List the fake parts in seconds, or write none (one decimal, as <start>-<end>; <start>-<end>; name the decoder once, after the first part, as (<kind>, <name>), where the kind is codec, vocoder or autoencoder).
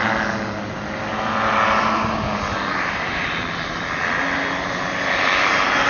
none